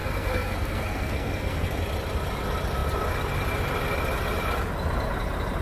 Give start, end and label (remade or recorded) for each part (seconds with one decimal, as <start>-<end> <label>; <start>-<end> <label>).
0.0-1.8 remade; 1.8-5.6 recorded